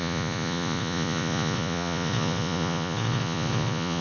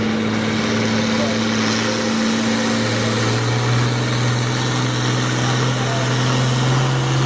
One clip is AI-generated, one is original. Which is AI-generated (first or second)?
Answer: first